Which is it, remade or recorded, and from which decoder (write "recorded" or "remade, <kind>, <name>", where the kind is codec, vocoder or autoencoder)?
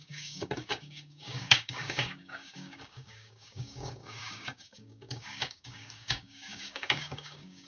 remade, codec, DAC